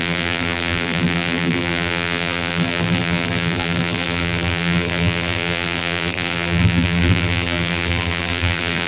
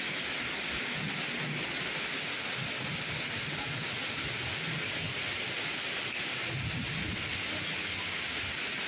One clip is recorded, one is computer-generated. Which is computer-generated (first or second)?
first